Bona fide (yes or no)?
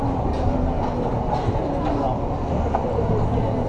yes